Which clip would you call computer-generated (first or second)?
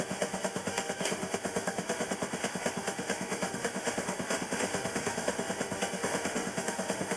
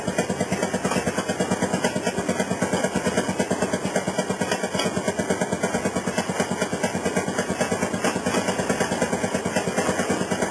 first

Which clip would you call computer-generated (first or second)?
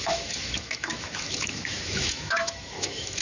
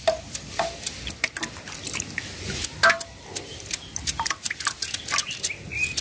first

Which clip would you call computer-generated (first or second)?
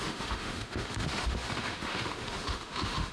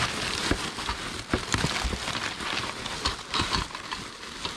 first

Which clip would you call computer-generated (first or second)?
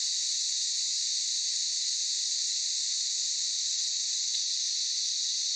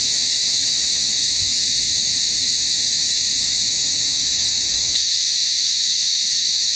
second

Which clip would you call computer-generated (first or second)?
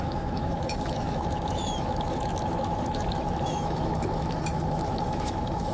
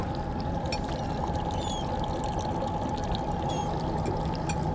first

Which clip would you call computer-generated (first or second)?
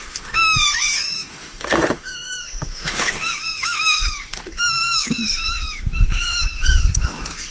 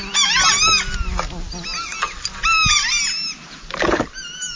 first